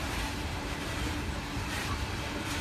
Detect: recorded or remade remade